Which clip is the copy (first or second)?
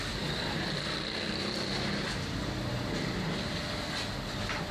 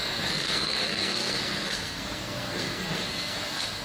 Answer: second